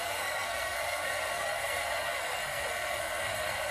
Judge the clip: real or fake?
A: fake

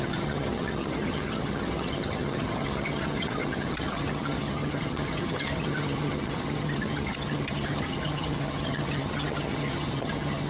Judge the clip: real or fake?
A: fake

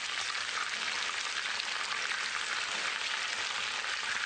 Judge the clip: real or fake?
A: real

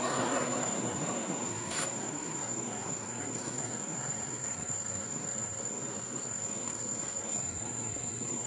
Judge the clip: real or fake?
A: fake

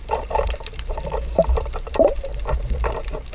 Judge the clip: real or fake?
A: fake